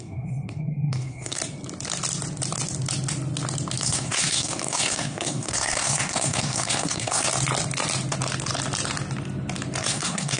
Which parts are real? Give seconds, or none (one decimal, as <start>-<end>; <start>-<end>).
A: 1.4-3.8; 7.3-9.8